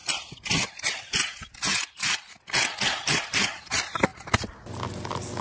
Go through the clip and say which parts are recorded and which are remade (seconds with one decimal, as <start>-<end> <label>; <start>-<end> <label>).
0.0-1.7 recorded; 1.7-2.2 remade; 2.2-5.4 recorded